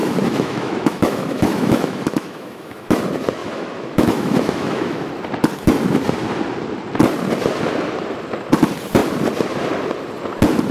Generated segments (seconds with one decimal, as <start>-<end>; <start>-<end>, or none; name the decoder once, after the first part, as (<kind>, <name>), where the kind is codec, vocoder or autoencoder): 0.0-3.0 (autoencoder, DAC-VAE); 3.4-5.1